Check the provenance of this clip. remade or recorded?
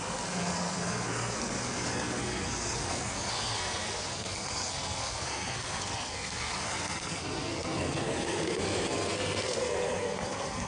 remade